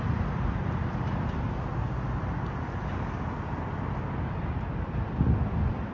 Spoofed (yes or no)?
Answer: no